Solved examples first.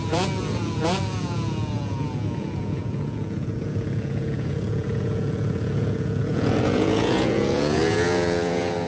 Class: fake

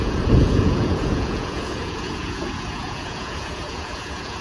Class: fake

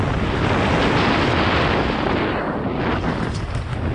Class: real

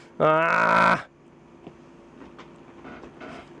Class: real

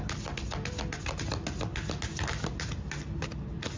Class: real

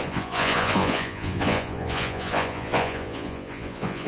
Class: fake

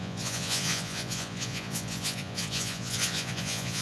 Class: fake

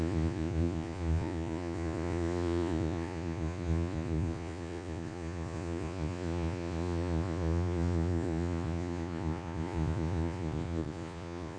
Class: fake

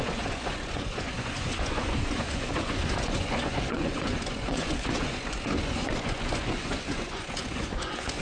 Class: fake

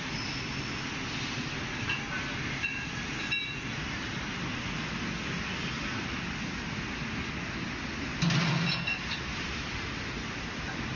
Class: real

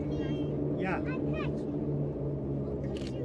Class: real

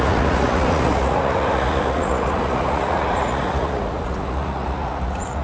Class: fake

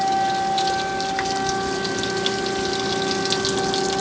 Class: real